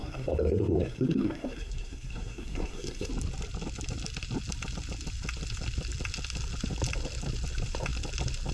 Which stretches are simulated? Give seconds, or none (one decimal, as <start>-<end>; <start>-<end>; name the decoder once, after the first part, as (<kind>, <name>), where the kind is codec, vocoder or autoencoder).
0.0-3.1 (codec, SNAC)